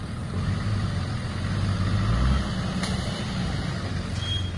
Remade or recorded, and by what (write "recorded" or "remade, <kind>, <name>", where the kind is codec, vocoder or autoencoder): recorded